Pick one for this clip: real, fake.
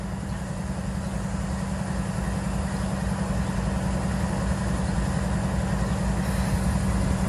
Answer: real